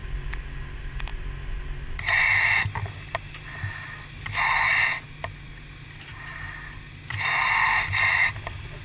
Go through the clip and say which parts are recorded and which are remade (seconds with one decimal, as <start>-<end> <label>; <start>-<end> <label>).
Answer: 0.0-8.8 recorded

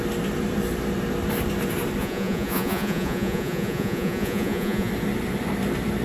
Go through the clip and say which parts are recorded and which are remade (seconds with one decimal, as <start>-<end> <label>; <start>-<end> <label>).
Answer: 0.0-2.0 recorded; 2.0-4.9 remade; 4.9-6.0 recorded